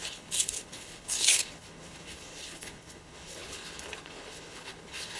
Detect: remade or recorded remade